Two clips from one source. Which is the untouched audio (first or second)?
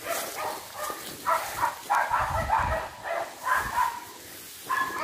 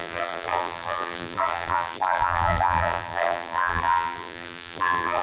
first